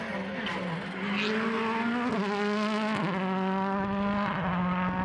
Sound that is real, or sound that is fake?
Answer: real